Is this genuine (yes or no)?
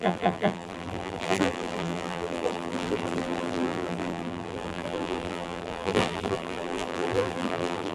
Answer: no